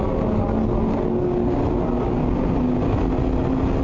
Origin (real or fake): real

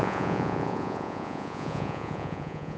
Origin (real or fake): fake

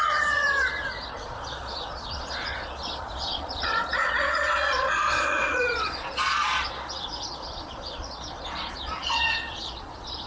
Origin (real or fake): fake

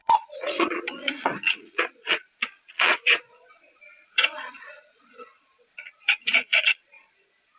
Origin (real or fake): fake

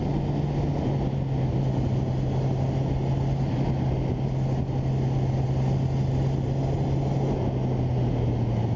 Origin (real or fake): real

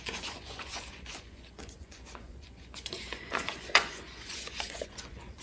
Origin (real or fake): fake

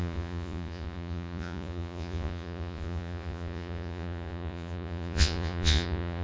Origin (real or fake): fake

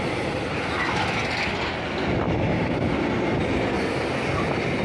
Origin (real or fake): real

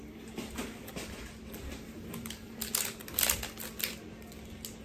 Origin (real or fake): real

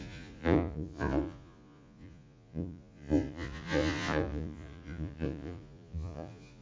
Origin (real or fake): fake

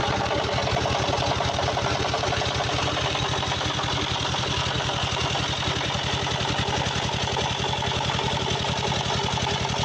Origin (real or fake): real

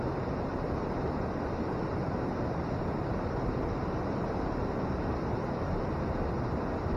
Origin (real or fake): real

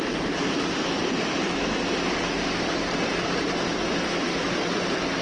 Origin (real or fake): real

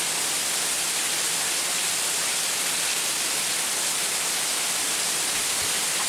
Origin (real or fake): real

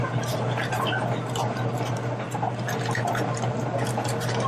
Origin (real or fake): real